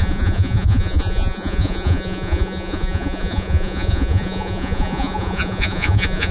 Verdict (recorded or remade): remade